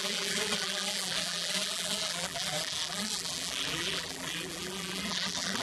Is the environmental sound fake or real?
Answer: fake